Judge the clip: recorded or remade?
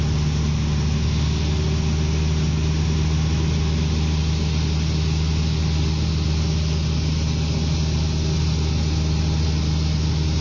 recorded